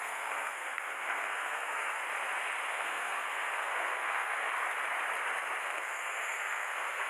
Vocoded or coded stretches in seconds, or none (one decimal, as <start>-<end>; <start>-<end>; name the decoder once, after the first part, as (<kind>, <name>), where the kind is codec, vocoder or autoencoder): 0.0-2.0 (codec, SNAC); 2.7-4.4; 5.6-7.1